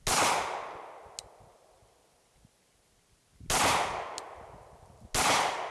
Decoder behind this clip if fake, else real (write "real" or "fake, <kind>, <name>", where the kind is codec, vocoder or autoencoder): real